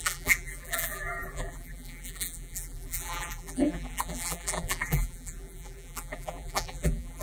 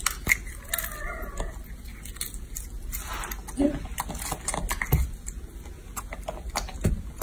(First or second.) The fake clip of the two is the first